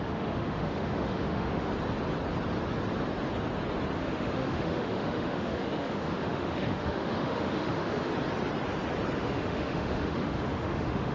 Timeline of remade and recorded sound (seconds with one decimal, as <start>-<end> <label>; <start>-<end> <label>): 0.0-1.7 remade; 1.7-4.0 recorded; 4.0-8.1 remade; 8.1-9.2 recorded; 9.2-11.1 remade